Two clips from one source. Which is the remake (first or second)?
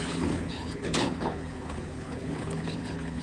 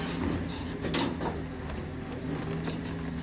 first